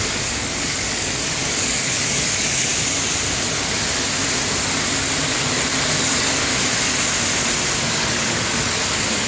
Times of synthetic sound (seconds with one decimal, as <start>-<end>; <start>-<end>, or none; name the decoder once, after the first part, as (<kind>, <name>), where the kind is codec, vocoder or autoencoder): 0.0-2.7 (codec, DAC); 6.0-6.5; 7.8-9.3